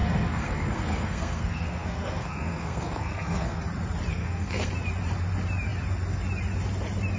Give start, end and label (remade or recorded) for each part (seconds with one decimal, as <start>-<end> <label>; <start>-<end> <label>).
0.0-3.6 remade; 3.6-4.1 recorded; 4.1-4.7 remade; 4.7-7.2 recorded